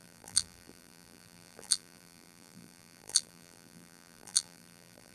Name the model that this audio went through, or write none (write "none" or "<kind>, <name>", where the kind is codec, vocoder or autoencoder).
vocoder, BigVGAN v2